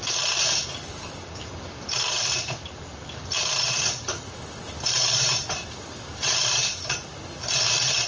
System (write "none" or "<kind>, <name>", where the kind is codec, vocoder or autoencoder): none